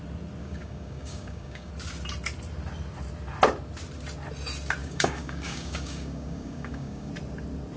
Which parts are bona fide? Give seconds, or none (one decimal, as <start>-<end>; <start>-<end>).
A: 0.0-0.4; 1.7-4.8; 7.1-7.8